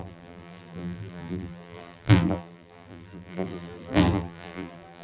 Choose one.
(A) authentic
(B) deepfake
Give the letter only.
B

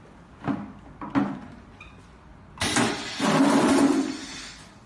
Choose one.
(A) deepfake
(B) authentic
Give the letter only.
B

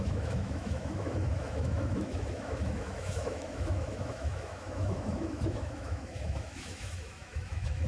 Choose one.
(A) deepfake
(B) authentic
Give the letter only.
A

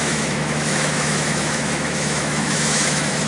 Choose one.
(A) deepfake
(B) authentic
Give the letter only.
A